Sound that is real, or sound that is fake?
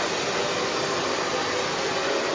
real